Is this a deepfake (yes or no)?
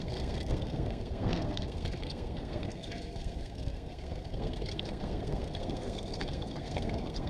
yes